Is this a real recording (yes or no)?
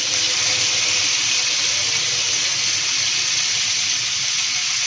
yes